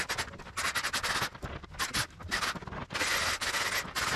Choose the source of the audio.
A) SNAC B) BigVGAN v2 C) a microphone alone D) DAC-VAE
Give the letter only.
C